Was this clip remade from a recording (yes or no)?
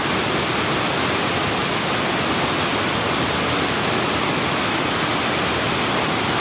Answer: no